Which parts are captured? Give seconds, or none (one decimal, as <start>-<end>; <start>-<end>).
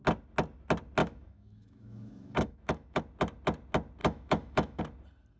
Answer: 0.0-1.0; 3.0-4.0; 4.8-5.4